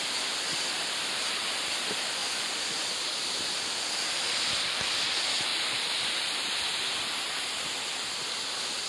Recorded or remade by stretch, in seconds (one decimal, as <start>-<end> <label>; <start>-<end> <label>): 0.0-2.2 recorded; 2.2-2.9 remade; 2.9-8.9 recorded

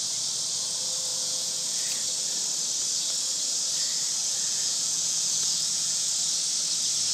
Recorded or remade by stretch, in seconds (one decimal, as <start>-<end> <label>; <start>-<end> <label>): 0.0-1.1 recorded; 1.1-1.9 remade; 1.9-4.2 recorded; 4.2-6.3 remade; 6.3-7.1 recorded

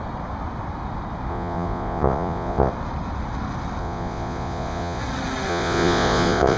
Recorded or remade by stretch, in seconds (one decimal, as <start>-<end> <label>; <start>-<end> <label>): 0.0-1.3 recorded; 1.3-2.7 remade; 2.7-3.8 recorded; 3.8-5.0 remade; 5.0-5.5 recorded; 5.5-6.6 remade

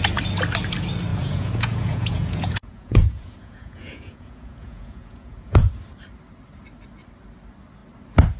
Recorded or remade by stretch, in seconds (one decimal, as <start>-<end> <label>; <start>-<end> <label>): 0.0-1.1 recorded; 1.1-5.7 remade; 5.7-8.4 recorded

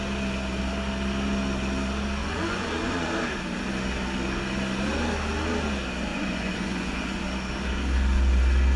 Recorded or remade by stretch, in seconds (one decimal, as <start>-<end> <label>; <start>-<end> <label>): 0.0-2.2 recorded; 2.2-3.1 remade; 3.1-6.1 recorded; 6.1-7.2 remade; 7.2-8.8 recorded

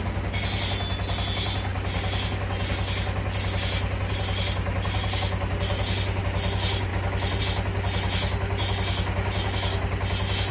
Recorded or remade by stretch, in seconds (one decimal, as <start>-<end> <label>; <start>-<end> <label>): 0.0-10.5 recorded

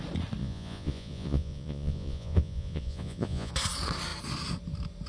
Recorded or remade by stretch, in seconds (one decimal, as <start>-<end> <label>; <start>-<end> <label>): 0.0-0.4 recorded; 0.4-3.5 remade; 3.5-5.1 recorded